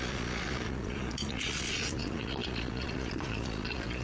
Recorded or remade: remade